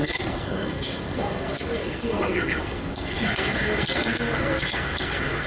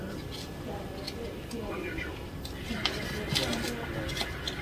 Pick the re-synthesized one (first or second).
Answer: first